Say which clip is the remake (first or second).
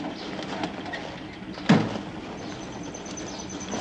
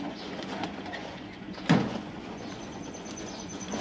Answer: second